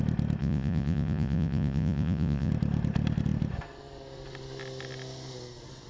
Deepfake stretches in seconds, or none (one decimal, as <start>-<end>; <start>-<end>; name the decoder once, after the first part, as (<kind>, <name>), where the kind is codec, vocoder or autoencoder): 0.4-2.5 (vocoder, Vocos)